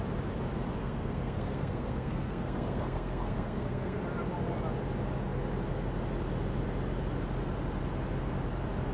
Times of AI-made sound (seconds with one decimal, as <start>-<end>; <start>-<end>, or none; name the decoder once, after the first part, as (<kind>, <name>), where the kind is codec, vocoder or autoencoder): 0.8-4.0 (codec, SNAC)